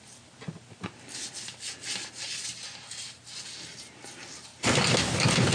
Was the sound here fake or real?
real